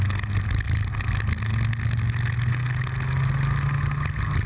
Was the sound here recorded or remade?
recorded